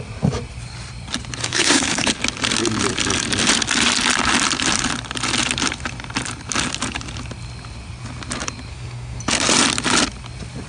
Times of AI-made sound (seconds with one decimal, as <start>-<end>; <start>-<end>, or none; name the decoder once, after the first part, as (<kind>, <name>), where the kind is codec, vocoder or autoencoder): 1.4-2.1 (codec, SNAC); 8.7-9.2